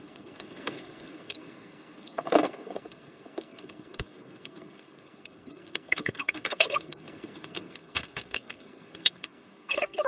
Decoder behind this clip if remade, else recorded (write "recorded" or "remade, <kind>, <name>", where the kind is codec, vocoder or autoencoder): remade, codec, SNAC